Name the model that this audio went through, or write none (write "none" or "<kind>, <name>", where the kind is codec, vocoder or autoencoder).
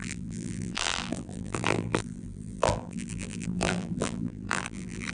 vocoder, BigVGAN v2